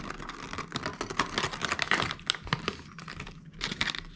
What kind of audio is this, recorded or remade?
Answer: recorded